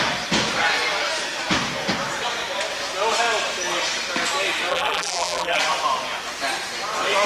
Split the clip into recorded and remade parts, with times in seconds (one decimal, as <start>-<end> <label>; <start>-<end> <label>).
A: 0.0-4.7 recorded; 4.7-5.6 remade; 5.6-7.3 recorded